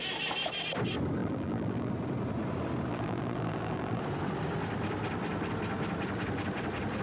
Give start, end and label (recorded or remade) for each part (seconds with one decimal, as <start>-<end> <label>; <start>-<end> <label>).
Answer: 0.0-1.2 recorded; 1.2-1.9 remade; 1.9-2.9 recorded; 2.9-4.0 remade; 4.0-7.0 recorded